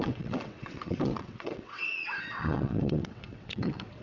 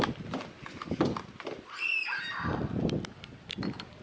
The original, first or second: second